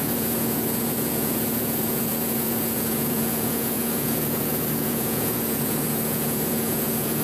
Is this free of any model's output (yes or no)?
no